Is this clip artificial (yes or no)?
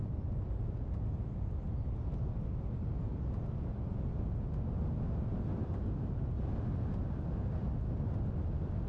no